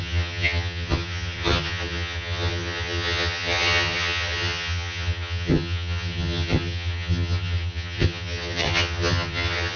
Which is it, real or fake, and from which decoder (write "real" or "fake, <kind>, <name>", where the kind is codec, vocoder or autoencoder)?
fake, vocoder, HiFi-GAN